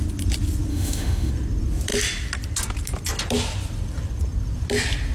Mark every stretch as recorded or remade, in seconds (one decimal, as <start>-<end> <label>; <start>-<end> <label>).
0.0-0.7 recorded; 0.7-1.3 remade; 1.3-5.1 recorded